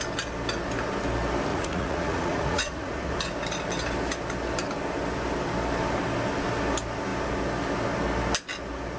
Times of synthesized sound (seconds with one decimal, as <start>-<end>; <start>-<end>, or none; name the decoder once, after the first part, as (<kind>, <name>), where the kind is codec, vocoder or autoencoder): 1.5-3.1 (vocoder, Vocos)